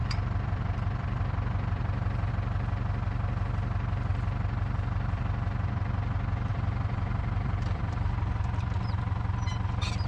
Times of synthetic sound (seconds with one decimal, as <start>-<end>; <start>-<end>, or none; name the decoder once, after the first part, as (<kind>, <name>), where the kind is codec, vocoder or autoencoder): 0.0-2.3 (vocoder, BigVGAN v2); 4.1-5.2; 6.5-8.1